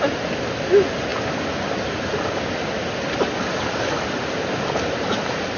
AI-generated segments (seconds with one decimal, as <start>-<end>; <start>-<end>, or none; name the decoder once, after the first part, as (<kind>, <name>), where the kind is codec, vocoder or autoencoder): none